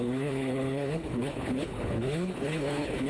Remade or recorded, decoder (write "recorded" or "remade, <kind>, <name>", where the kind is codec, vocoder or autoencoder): remade, codec, HILCodec